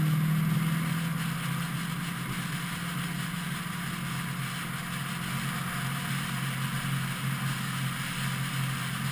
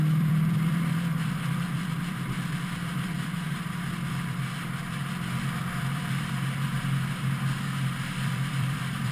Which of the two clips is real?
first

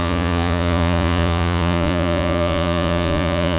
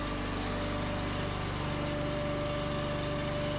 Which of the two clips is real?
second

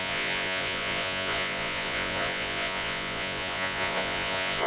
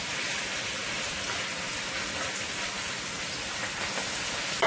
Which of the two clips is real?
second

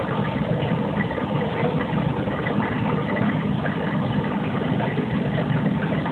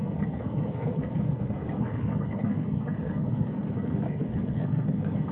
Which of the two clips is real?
first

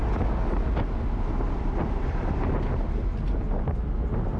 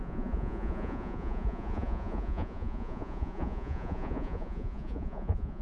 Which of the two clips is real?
first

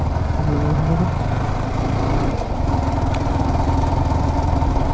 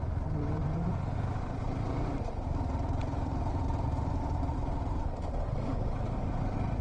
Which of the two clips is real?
first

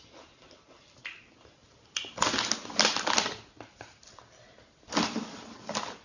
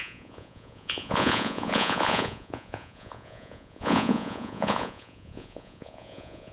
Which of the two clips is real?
first